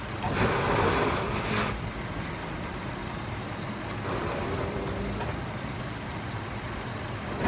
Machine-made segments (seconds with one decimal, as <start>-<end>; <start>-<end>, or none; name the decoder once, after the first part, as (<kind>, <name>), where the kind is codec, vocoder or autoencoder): 3.0-3.5 (vocoder, BigVGAN v2)